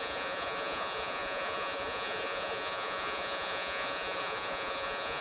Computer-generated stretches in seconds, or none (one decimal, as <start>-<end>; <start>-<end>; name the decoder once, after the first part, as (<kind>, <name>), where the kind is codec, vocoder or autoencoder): 0.0-5.2 (vocoder, Vocos)